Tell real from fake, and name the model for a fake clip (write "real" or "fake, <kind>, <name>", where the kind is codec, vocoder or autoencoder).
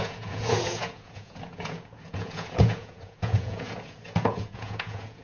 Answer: fake, vocoder, Vocos